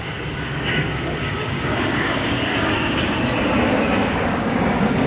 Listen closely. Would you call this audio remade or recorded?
remade